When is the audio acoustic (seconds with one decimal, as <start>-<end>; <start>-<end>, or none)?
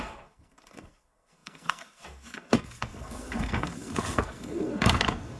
none